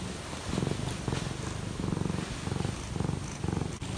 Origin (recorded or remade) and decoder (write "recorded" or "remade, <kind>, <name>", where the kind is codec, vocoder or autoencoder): recorded